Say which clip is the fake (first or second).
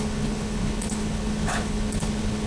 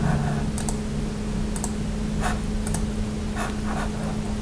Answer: first